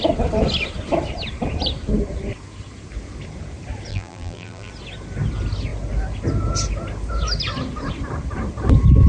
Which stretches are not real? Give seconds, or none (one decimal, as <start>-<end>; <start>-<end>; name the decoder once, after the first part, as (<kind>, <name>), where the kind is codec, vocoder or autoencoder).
3.9-4.7 (vocoder, BigVGAN v2)